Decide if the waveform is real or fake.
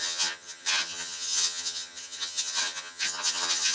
fake